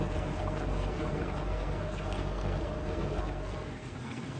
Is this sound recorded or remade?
remade